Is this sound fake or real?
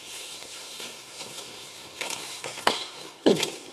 fake